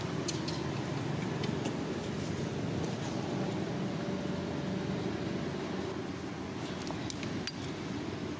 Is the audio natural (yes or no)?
yes